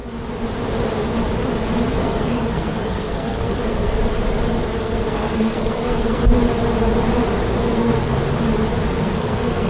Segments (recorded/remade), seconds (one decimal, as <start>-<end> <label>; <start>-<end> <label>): 0.0-1.9 recorded; 1.9-4.0 remade; 4.0-4.8 recorded; 4.8-6.2 remade; 6.2-7.6 recorded; 7.6-8.2 remade; 8.2-8.9 recorded; 8.9-9.7 remade